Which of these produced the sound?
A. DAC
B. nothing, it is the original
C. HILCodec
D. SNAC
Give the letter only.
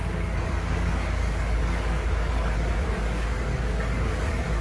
A